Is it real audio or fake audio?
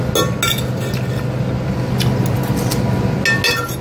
real